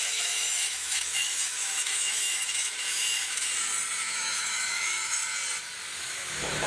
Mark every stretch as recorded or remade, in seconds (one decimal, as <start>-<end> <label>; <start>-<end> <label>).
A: 0.0-3.5 remade; 3.5-4.0 recorded; 4.0-5.2 remade; 5.2-6.0 recorded; 6.0-6.7 remade